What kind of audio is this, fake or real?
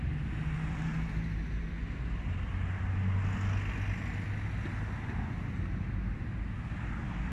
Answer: real